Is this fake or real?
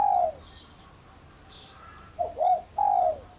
real